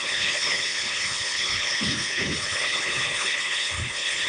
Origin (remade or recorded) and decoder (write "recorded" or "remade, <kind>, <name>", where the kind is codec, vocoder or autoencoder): remade, codec, HILCodec